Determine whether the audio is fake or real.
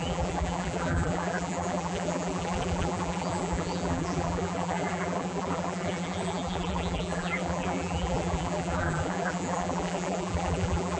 fake